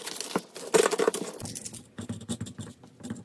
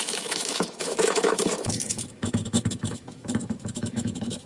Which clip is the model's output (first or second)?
second